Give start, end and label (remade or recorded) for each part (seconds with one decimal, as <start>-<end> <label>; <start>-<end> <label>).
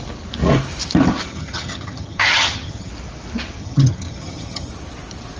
0.0-1.3 recorded; 1.3-2.9 remade; 2.9-3.6 recorded; 3.6-4.7 remade; 4.7-5.4 recorded